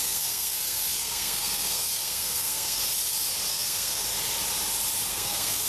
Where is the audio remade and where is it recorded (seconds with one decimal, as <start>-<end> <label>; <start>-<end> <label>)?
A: 0.0-2.8 remade; 2.8-3.5 recorded; 3.5-4.0 remade; 4.0-5.1 recorded; 5.1-5.7 remade

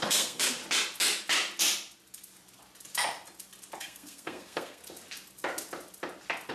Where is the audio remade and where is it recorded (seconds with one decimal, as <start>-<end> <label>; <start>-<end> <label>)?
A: 0.0-0.6 remade; 0.6-3.8 recorded; 3.8-4.8 remade; 4.8-6.5 recorded

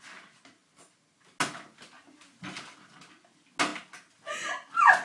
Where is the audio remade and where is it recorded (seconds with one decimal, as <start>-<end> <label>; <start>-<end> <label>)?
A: 0.0-5.0 recorded

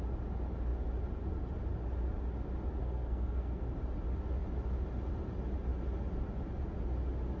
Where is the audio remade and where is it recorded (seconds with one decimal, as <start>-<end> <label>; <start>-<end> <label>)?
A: 0.0-2.8 recorded; 2.8-3.6 remade; 3.6-7.4 recorded

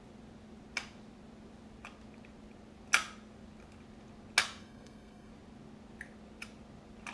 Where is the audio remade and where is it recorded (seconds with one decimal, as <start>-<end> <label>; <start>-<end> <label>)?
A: 0.0-4.6 recorded; 4.6-5.3 remade; 5.3-7.1 recorded